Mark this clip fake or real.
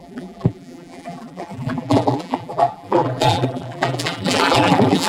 fake